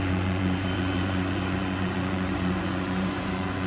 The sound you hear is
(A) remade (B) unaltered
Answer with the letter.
A